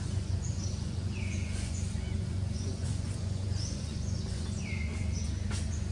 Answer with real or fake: fake